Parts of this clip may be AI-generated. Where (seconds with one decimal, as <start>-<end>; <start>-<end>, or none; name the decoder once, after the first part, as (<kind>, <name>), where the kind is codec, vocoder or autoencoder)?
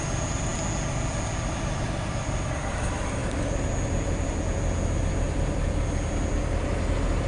0.0-0.5 (vocoder, BigVGAN v2); 2.1-3.2